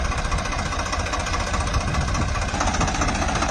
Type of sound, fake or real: real